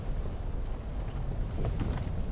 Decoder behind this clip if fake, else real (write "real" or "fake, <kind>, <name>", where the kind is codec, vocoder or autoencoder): real